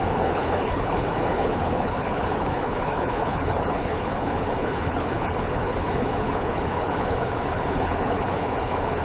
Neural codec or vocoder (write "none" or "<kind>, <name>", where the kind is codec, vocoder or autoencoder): codec, HILCodec